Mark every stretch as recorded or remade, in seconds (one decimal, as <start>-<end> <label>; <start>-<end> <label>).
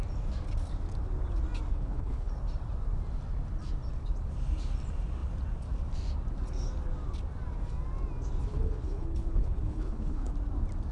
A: 0.0-1.7 recorded; 1.7-2.3 remade; 2.3-8.5 recorded; 8.5-10.3 remade; 10.3-10.9 recorded